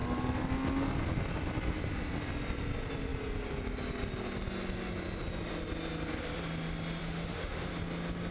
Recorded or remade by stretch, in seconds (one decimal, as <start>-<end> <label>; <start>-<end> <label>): 0.0-7.0 recorded; 7.0-7.7 remade; 7.7-8.3 recorded